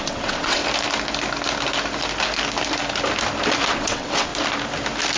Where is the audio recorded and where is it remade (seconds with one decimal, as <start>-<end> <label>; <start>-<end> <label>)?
0.0-0.6 remade; 0.6-3.7 recorded; 3.7-4.3 remade; 4.3-5.2 recorded

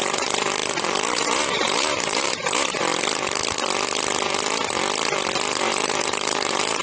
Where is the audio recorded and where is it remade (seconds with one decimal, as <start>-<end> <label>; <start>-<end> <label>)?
0.0-2.9 remade; 2.9-5.6 recorded; 5.6-6.8 remade

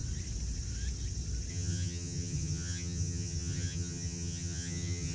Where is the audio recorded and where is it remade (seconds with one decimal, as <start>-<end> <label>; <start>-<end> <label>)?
0.0-1.5 recorded; 1.5-5.1 remade

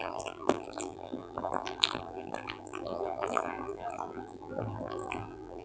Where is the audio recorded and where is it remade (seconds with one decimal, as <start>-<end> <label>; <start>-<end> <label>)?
0.0-5.6 remade

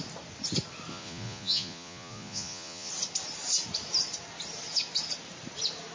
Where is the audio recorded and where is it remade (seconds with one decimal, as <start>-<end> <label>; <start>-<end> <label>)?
0.0-0.9 recorded; 0.9-2.9 remade; 2.9-5.9 recorded